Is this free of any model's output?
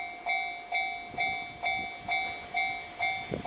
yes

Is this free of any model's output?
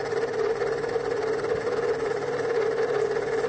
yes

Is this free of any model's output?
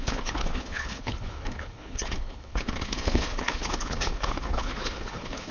no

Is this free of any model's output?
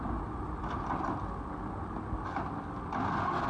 yes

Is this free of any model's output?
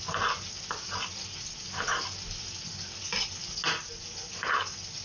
yes